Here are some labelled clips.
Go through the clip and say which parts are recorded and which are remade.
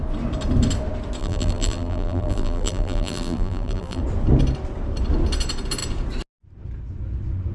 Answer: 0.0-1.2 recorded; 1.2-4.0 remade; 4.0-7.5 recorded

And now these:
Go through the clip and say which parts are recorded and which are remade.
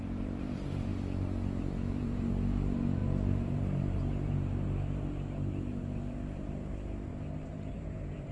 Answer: 0.0-0.9 remade; 0.9-1.6 recorded; 1.6-7.1 remade; 7.1-7.7 recorded; 7.7-8.3 remade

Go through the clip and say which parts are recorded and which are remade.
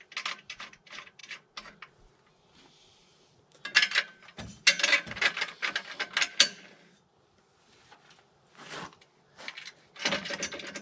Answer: 0.0-10.8 recorded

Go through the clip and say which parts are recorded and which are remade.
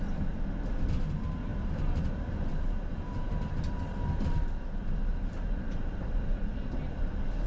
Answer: 0.0-1.5 recorded; 1.5-6.0 remade; 6.0-7.5 recorded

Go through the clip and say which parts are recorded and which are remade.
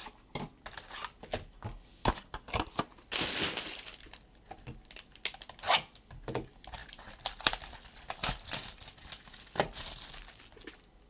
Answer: 0.0-11.1 recorded